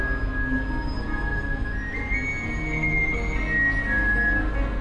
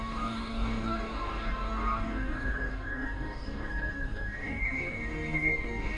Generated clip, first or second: second